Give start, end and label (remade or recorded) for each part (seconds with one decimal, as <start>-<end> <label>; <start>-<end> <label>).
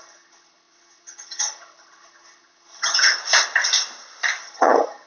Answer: 0.0-3.1 remade; 3.1-4.4 recorded; 4.4-5.1 remade